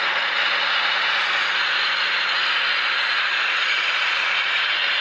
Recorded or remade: remade